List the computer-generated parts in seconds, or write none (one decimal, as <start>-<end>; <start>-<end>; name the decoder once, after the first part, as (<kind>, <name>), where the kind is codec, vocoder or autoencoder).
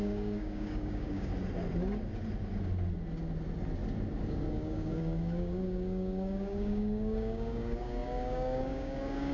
0.0-1.3 (codec, DAC); 4.3-9.3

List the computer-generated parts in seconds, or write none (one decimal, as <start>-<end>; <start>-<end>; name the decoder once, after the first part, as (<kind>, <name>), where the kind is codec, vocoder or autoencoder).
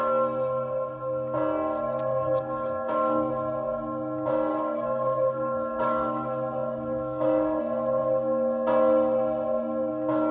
2.1-3.3 (codec, DAC); 4.5-7.6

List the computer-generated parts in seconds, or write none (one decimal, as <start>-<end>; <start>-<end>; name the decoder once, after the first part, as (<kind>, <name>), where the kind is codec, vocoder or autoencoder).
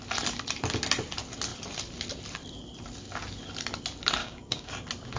4.2-4.7 (codec, DAC)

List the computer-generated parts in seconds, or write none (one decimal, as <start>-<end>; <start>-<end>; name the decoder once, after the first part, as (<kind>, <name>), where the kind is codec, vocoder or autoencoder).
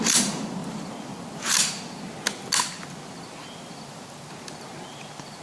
none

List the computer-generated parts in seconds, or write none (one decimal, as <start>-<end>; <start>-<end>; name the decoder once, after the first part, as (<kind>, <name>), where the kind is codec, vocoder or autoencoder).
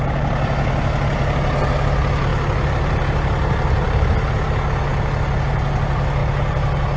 none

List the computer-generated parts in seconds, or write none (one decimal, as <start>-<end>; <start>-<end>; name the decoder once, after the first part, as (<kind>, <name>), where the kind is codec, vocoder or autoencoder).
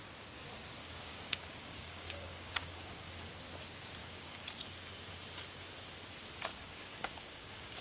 0.8-3.3 (codec, DAC); 4.0-4.6; 6.5-7.8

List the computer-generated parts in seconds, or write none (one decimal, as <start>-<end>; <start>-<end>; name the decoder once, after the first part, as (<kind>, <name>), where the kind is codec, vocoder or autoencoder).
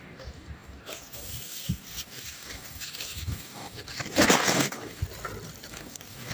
0.0-5.0 (codec, DAC); 5.7-6.3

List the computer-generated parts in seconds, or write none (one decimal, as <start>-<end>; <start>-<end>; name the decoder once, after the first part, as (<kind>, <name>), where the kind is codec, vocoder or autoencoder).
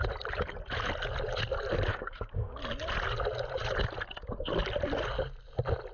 1.9-2.6 (codec, DAC)